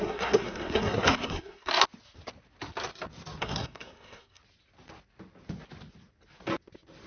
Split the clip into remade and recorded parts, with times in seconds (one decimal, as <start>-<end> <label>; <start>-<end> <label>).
0.0-1.7 remade; 1.7-3.4 recorded; 3.4-4.4 remade; 4.4-7.1 recorded